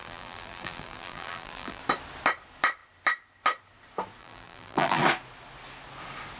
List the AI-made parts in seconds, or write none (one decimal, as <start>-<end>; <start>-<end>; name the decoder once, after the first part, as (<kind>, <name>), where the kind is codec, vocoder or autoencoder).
0.0-1.8 (vocoder, BigVGAN v2); 4.2-5.0

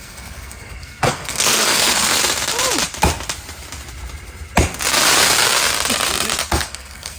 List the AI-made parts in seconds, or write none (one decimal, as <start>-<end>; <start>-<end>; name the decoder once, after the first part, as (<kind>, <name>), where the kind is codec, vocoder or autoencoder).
0.0-2.1 (codec, SNAC); 6.4-7.2